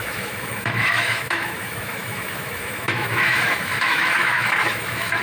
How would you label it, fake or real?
fake